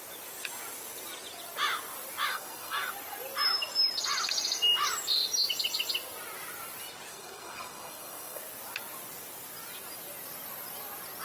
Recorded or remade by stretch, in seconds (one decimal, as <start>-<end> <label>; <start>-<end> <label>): 0.0-2.3 recorded; 2.3-2.9 remade; 2.9-7.1 recorded; 7.1-8.4 remade; 8.4-11.2 recorded